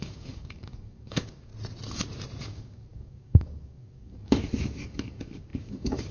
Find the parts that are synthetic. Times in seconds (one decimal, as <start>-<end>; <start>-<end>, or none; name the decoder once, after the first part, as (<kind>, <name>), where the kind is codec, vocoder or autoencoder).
0.0-1.5 (codec, DAC); 2.4-6.1